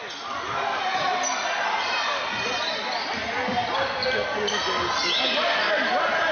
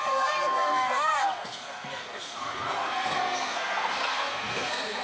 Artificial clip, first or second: second